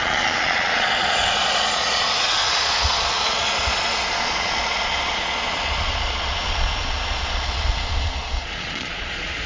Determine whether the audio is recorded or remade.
remade